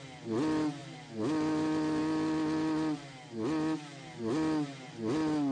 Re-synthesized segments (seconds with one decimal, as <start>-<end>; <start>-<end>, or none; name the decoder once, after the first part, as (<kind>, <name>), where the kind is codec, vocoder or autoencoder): none